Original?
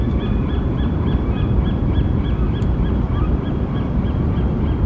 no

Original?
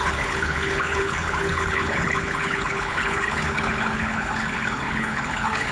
no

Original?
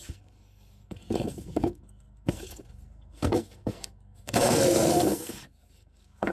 no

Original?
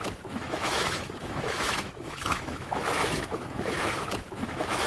no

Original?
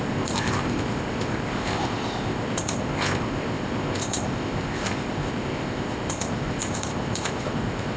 no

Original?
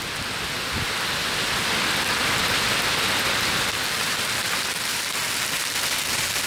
yes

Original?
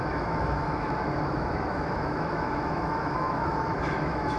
no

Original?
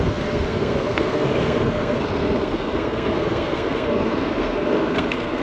no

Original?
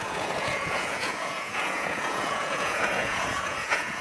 no